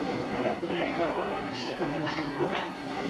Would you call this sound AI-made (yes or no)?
yes